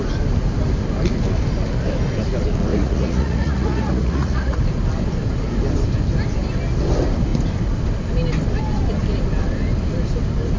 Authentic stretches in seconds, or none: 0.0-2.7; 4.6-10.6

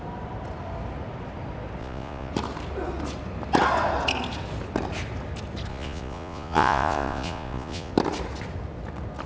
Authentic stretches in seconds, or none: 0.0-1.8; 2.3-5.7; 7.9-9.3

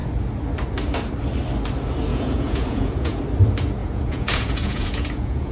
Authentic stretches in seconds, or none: 0.0-2.1; 3.2-3.8

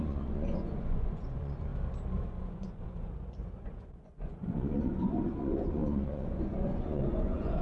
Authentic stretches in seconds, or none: 1.7-2.4

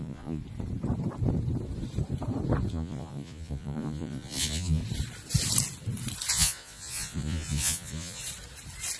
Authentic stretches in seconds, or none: 0.4-2.7; 4.8-6.3; 8.2-9.0

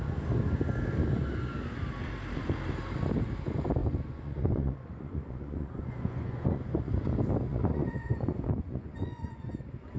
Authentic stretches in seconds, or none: 0.0-3.8; 6.9-7.5; 9.5-10.0

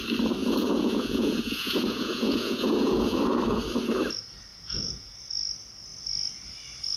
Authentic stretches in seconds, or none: 0.0-0.4; 3.2-4.5; 5.1-7.0